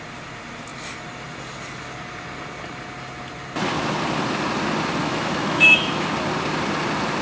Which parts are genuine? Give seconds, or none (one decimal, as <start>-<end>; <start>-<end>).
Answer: 0.0-5.0; 6.1-7.2